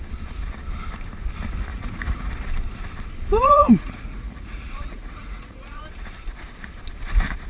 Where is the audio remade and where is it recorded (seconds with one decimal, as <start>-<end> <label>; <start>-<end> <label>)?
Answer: 0.0-1.7 recorded; 1.7-2.3 remade; 2.3-3.3 recorded; 3.3-5.8 remade; 5.8-7.5 recorded